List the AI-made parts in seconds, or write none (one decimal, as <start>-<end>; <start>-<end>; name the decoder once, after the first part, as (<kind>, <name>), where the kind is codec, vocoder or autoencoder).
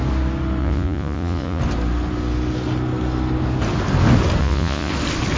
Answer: 0.6-1.6 (vocoder, Vocos); 4.4-4.9